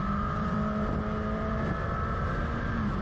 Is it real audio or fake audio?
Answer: real